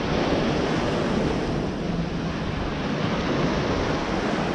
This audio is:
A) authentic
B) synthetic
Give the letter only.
A